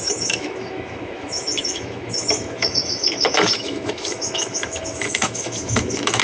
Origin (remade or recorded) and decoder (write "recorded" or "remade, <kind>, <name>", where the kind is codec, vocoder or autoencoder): remade, autoencoder, DAC-VAE